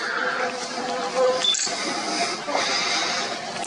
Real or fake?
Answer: real